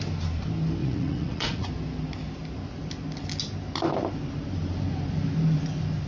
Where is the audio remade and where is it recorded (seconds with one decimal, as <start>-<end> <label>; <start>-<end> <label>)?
0.0-0.8 recorded; 0.8-1.7 remade; 1.7-6.1 recorded